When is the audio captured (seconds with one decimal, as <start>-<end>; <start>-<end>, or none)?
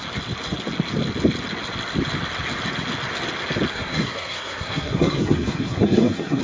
0.0-3.7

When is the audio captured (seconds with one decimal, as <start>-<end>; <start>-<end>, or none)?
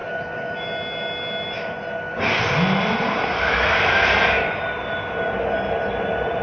0.0-6.4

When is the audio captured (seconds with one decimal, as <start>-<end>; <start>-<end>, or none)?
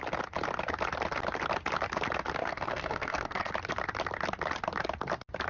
0.0-2.4; 3.5-5.5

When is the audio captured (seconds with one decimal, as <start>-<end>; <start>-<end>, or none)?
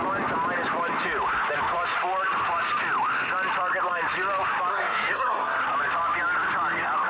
0.0-4.7; 5.6-7.1